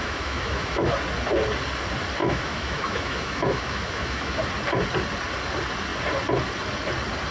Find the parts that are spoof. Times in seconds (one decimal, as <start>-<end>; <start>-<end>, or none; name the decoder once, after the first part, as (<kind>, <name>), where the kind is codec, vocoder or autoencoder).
0.0-0.9 (autoencoder, DAC-VAE); 2.2-4.4